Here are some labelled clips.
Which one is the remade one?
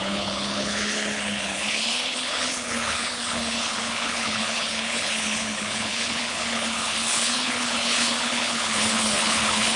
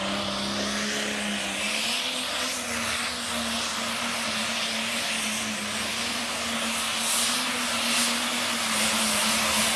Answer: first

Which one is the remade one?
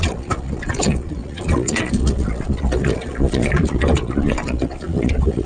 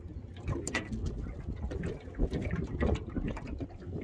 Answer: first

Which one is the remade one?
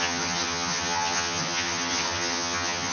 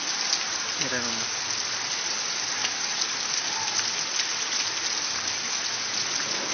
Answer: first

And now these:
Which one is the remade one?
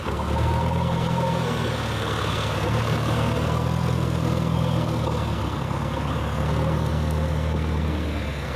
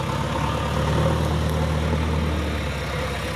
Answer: first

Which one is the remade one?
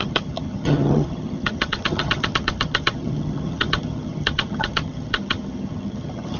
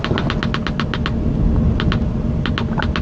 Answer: first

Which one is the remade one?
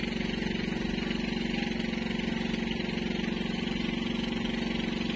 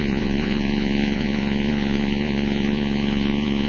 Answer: second